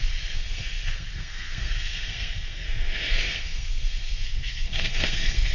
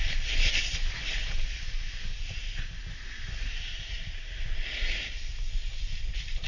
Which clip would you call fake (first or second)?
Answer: first